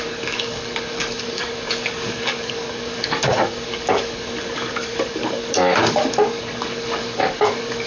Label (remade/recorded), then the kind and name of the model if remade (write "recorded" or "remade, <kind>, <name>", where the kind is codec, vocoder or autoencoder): remade, codec, DAC